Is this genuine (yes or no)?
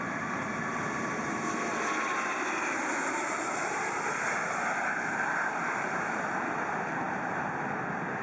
yes